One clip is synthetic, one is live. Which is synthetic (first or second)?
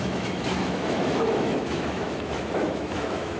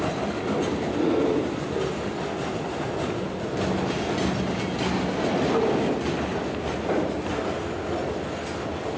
first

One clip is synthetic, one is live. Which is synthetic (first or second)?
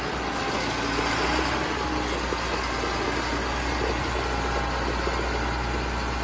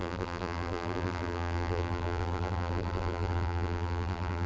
second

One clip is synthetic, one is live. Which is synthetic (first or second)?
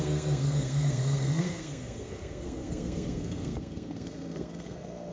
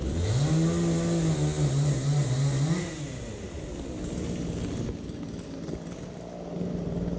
first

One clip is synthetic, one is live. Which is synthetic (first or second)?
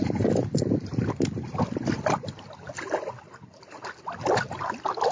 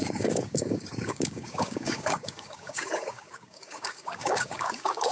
second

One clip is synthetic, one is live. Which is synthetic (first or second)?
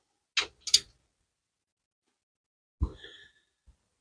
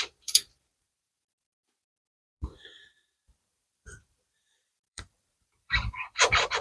second